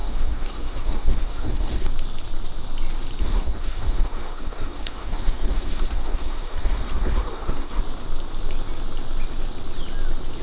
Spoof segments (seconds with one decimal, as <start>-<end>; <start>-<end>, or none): 0.0-1.9; 3.2-7.8